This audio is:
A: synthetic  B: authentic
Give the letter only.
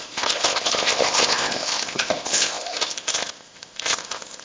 A